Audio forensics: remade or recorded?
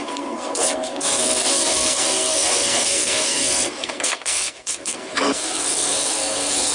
remade